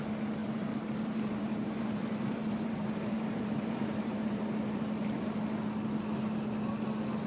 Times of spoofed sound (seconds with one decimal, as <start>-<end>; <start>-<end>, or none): 0.4-4.8